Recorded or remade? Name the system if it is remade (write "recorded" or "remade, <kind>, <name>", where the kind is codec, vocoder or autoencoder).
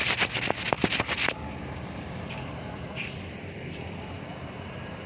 remade, vocoder, BigVGAN v2